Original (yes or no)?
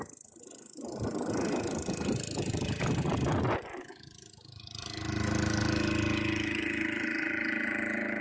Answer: yes